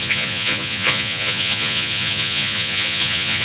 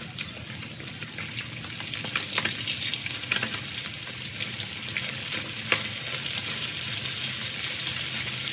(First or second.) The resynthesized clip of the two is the first